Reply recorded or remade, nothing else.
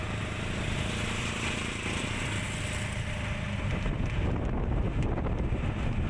recorded